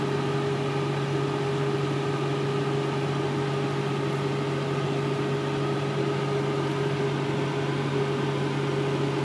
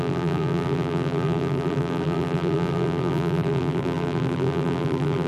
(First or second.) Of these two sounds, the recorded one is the first